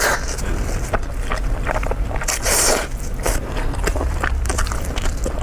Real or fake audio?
real